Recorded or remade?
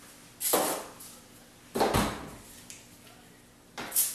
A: recorded